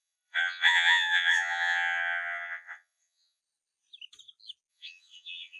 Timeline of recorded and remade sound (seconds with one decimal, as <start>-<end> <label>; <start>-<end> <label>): 0.0-3.4 remade; 3.4-4.7 recorded; 4.7-5.6 remade